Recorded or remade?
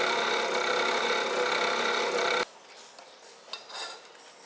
recorded